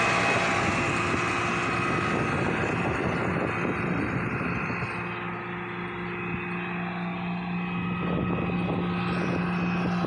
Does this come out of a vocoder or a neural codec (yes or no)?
no